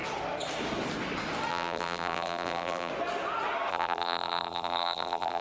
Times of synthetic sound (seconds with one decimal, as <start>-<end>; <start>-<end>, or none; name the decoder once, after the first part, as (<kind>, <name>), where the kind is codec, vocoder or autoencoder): 1.5-2.9 (vocoder, BigVGAN v2); 3.7-5.4